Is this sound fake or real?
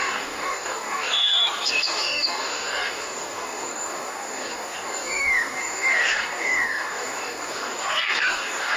fake